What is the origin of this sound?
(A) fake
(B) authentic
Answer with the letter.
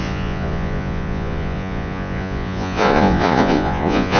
A